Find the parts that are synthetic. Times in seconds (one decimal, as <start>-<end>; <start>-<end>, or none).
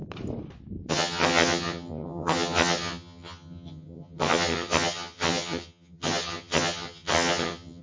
0.9-7.8